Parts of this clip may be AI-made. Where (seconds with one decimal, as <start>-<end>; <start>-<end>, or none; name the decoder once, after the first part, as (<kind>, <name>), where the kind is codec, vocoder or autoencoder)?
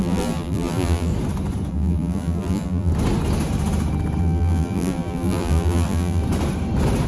0.0-1.1 (vocoder, BigVGAN v2); 1.7-2.9; 4.2-6.2